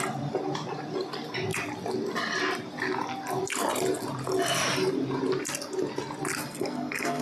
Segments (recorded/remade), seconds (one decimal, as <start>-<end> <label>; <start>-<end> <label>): 0.0-6.4 recorded; 6.4-7.2 remade